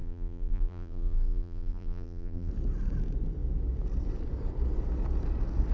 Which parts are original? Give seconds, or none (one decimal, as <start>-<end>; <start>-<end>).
2.5-5.7